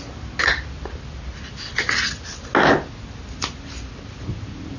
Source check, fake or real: real